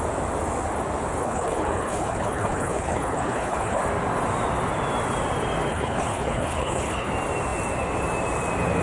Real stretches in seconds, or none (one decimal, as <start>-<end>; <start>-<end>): 0.0-1.2; 3.8-5.7; 7.1-8.8